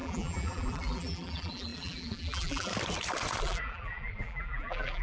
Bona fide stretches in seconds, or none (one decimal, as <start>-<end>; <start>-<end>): 2.7-3.4